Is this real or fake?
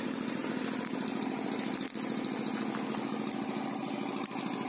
real